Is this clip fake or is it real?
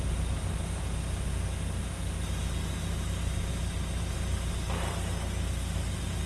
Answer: real